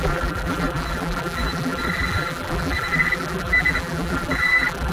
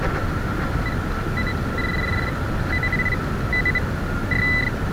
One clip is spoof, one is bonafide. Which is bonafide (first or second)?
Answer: second